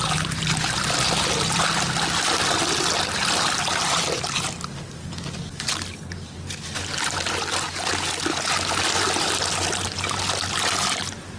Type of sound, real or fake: real